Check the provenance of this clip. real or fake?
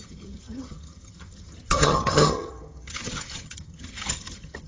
fake